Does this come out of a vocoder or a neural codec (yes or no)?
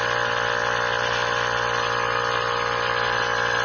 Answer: no